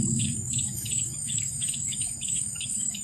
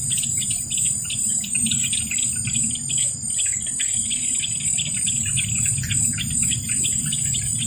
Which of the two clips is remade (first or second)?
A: first